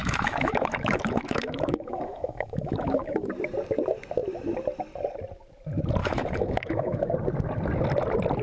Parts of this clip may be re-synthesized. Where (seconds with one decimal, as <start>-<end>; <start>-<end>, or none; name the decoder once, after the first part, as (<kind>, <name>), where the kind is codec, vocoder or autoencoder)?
0.0-3.3 (autoencoder, DAC-VAE); 6.0-7.1